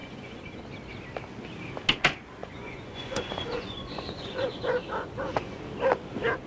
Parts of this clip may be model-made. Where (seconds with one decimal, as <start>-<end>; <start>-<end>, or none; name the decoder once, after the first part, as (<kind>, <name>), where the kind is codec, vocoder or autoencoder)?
0.0-0.6 (vocoder, Vocos); 2.4-5.6